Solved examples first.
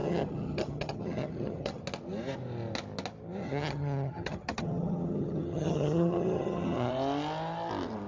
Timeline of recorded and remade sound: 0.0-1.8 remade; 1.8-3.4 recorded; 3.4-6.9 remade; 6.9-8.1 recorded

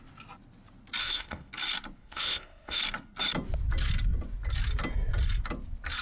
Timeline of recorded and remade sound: 0.0-1.0 recorded; 1.0-1.5 remade; 1.5-2.0 recorded; 2.0-2.8 remade; 2.8-6.0 recorded

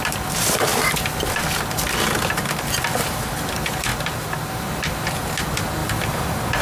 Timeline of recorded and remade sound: 0.0-0.7 remade; 0.7-1.2 recorded; 1.2-3.9 remade; 3.9-4.5 recorded; 4.5-6.6 remade

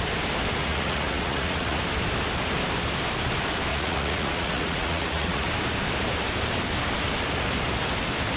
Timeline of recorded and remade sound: 0.0-0.6 recorded; 0.6-1.8 remade; 1.8-3.7 recorded; 3.7-5.5 remade; 5.5-8.4 recorded

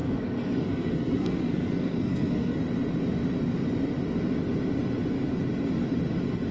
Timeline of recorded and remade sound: 0.0-2.6 remade; 2.6-6.5 recorded